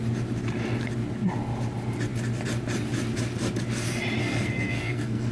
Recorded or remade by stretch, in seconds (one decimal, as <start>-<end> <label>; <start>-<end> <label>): 0.0-4.2 recorded; 4.2-5.3 remade